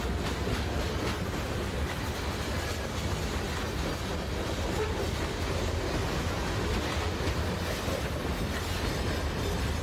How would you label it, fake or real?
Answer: real